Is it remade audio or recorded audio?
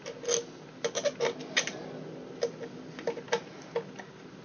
recorded